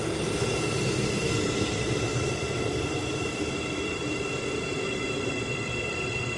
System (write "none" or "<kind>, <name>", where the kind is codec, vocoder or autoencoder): vocoder, BigVGAN v2